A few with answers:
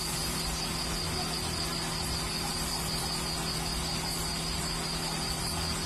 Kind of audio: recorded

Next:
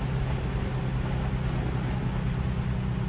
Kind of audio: recorded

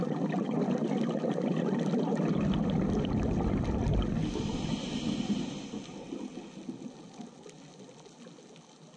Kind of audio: recorded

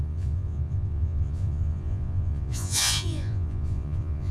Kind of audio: remade